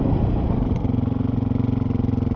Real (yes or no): yes